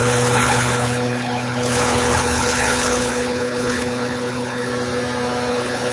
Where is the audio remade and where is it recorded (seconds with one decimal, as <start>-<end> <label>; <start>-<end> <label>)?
0.0-4.7 remade; 4.7-5.5 recorded; 5.5-5.9 remade